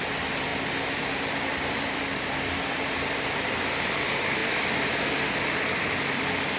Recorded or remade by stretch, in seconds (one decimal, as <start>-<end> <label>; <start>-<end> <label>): 0.0-0.5 remade; 0.5-1.7 recorded; 1.7-4.4 remade; 4.4-6.6 recorded